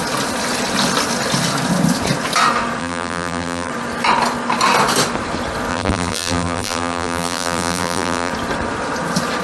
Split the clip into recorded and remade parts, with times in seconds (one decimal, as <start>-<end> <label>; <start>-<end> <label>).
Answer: 0.0-2.8 recorded; 2.8-3.7 remade; 3.7-5.7 recorded; 5.7-8.3 remade; 8.3-9.4 recorded